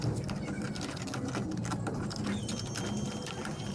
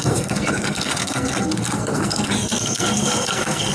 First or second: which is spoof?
second